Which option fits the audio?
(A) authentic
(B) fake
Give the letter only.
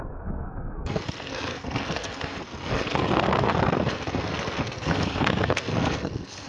B